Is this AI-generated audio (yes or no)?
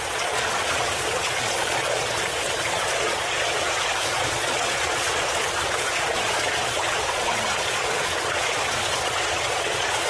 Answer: yes